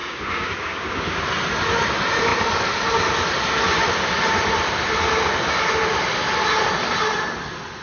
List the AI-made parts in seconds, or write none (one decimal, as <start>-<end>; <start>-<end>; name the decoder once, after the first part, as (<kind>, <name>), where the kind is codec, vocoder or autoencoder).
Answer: 0.0-1.2 (codec, DAC)